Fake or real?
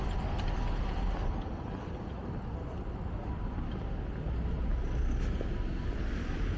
real